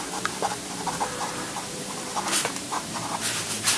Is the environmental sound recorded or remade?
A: remade